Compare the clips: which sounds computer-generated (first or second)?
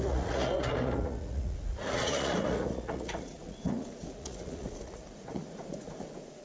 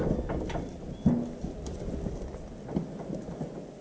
first